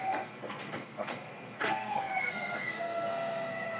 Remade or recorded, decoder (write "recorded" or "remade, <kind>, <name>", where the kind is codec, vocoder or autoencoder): remade, codec, SNAC